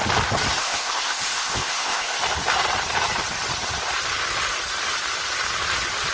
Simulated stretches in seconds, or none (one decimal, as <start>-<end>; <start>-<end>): 0.6-2.2